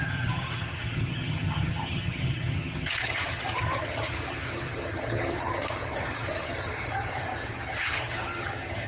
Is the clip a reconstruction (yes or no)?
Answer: yes